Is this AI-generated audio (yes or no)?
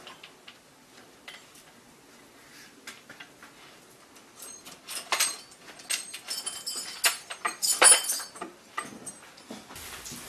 no